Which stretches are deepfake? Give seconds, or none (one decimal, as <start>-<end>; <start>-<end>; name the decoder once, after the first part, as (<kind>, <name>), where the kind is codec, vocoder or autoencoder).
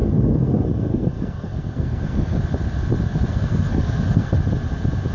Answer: 0.0-2.4 (codec, SNAC); 3.3-4.3